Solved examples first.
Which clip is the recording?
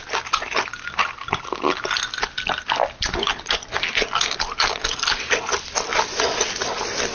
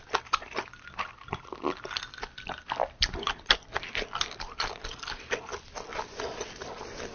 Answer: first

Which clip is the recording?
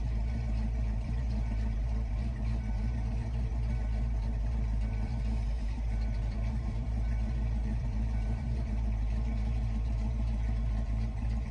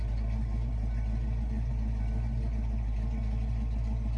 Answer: second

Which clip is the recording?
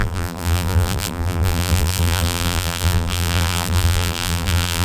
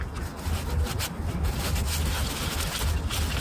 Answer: second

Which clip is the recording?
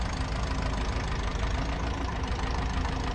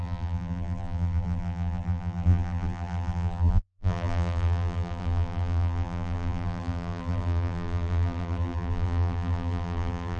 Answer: first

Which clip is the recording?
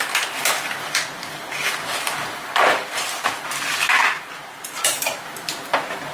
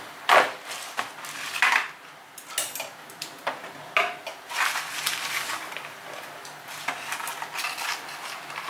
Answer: second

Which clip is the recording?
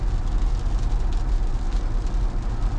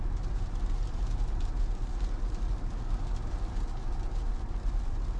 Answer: first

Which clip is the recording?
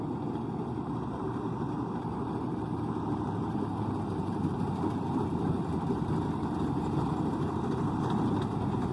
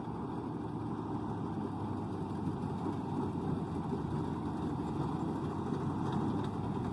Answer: second